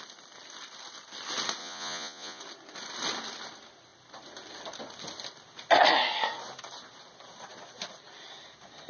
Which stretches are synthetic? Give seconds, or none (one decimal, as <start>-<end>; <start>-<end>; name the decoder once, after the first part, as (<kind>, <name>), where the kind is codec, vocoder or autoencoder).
1.6-2.4 (vocoder, Vocos)